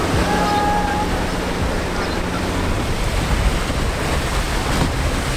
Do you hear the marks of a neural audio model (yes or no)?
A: no